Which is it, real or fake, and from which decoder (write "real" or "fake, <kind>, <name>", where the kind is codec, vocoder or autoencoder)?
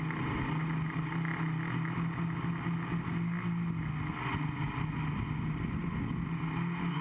real